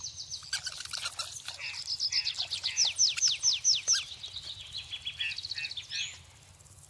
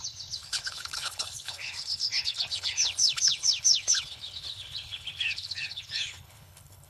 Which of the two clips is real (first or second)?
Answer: first